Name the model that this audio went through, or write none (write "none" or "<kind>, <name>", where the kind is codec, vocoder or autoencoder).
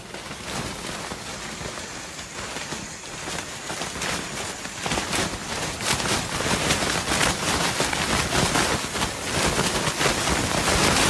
none